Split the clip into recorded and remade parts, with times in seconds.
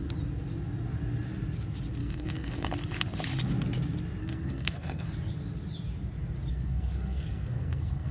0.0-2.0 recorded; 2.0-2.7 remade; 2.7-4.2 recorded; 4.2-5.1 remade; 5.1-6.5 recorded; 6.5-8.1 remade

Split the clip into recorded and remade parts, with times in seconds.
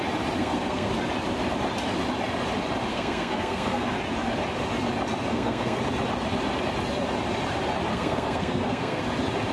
0.0-0.4 recorded; 0.4-0.9 remade; 0.9-2.9 recorded; 2.9-3.9 remade; 3.9-5.3 recorded; 5.3-5.8 remade; 5.8-7.9 recorded; 7.9-9.0 remade; 9.0-9.5 recorded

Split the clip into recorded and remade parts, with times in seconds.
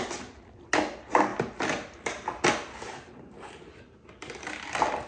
0.0-5.1 recorded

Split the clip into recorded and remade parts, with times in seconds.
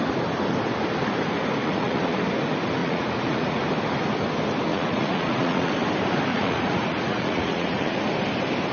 0.0-1.6 recorded; 1.6-2.2 remade; 2.2-2.8 recorded; 2.8-3.6 remade; 3.6-4.7 recorded; 4.7-5.7 remade; 5.7-6.3 recorded; 6.3-8.0 remade; 8.0-8.7 recorded